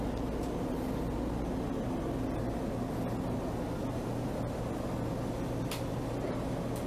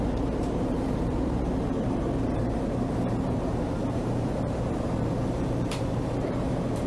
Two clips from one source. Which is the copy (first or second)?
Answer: second